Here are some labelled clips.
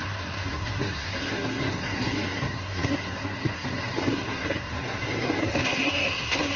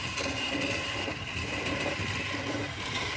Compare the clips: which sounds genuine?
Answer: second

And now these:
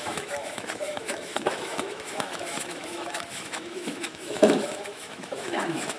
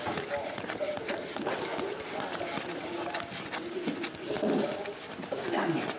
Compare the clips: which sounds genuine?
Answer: second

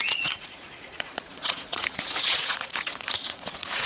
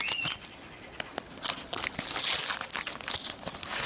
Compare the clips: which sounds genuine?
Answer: second